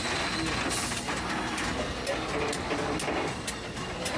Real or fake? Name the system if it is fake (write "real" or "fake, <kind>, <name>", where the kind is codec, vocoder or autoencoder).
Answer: real